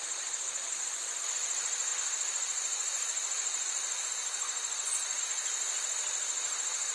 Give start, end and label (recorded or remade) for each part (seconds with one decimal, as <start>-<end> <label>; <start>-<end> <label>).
0.0-0.6 recorded; 0.6-1.2 remade; 1.2-6.9 recorded